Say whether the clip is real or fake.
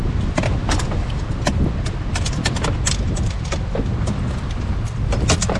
real